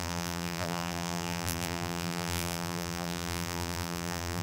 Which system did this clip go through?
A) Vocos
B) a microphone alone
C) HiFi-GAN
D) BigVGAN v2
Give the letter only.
D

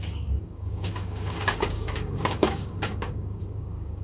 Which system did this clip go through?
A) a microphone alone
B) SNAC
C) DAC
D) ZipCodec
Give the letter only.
C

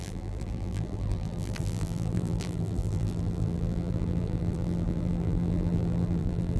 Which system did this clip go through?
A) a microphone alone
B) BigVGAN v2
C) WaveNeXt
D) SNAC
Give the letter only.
B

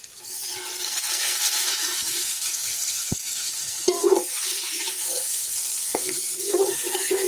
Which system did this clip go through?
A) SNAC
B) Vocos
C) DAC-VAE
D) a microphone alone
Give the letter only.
A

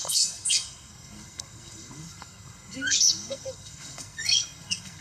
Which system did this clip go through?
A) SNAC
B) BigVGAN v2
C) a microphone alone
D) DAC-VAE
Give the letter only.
A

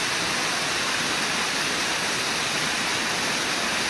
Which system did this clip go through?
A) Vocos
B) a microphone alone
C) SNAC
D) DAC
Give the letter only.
B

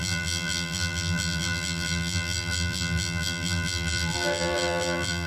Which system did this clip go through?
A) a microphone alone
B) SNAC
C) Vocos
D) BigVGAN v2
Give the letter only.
D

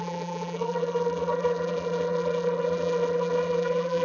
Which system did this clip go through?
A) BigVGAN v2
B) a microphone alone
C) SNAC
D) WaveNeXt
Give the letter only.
A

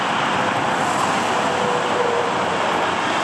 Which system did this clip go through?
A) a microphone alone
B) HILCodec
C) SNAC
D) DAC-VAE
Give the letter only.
A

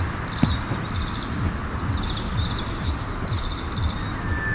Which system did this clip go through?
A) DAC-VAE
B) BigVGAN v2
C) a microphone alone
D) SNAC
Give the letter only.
C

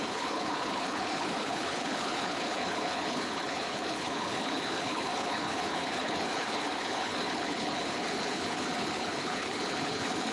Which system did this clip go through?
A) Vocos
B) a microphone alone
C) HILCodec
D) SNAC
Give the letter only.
C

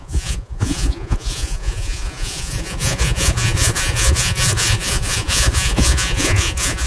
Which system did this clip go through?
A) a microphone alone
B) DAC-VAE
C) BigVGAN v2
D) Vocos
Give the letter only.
D